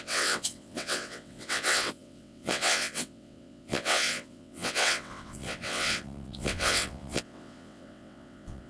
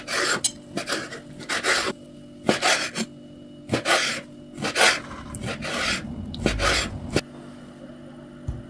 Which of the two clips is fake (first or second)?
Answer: first